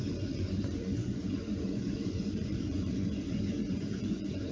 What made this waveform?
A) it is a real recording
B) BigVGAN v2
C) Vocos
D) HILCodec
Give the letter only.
C